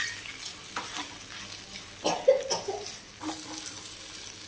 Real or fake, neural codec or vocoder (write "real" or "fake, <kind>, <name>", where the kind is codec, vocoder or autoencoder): real